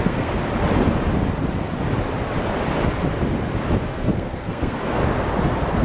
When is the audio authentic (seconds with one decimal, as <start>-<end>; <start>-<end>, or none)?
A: 0.4-3.9; 5.0-5.8